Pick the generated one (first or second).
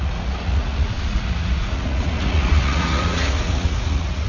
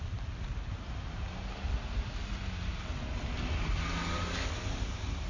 first